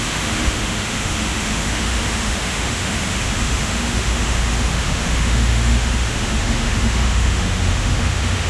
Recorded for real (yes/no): no